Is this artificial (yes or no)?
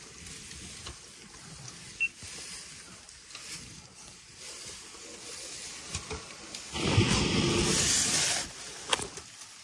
no